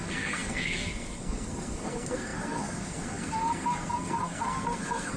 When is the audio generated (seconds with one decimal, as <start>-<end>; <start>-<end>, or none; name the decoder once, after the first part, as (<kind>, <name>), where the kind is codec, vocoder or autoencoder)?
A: 0.0-5.2 (codec, SNAC)